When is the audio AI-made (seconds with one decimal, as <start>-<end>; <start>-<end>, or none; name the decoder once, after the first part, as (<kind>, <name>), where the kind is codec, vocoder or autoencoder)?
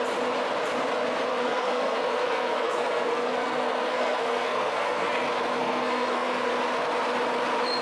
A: 1.3-5.1 (codec, SNAC); 5.6-6.5